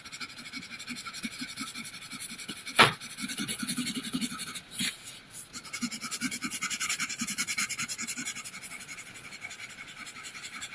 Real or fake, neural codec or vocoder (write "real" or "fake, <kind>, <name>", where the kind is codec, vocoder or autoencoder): fake, vocoder, Vocos